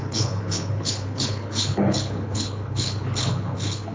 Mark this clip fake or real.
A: fake